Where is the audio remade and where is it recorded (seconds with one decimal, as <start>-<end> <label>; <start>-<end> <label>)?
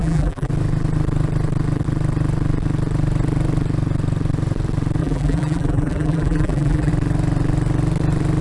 0.0-0.5 remade; 0.5-5.0 recorded; 5.0-6.9 remade; 6.9-8.4 recorded